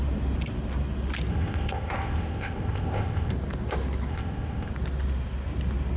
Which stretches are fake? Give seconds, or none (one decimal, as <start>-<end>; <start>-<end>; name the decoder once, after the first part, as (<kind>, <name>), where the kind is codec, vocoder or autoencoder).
1.3-3.3 (codec, ZipCodec); 4.1-4.7